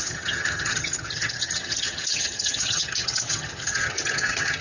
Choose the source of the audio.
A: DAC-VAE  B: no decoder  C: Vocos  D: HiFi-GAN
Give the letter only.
D